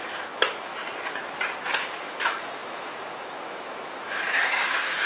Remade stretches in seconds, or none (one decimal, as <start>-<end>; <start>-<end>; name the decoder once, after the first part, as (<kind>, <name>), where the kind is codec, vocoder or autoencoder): 0.0-0.8 (autoencoder, DAC-VAE); 1.7-5.1